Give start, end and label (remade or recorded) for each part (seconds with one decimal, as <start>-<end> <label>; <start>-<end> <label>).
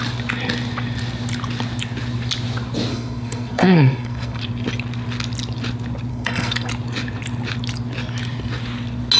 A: 0.0-2.9 recorded; 2.9-4.4 remade; 4.4-6.1 recorded; 6.1-6.7 remade; 6.7-9.2 recorded